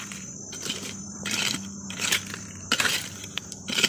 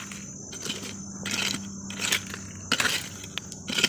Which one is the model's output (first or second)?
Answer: first